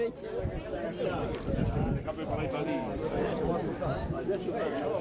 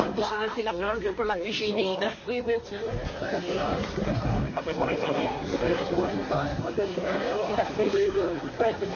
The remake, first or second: second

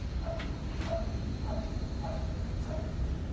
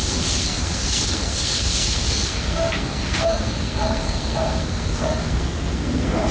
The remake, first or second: second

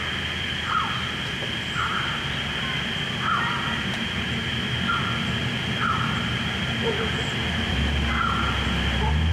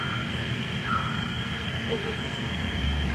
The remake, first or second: second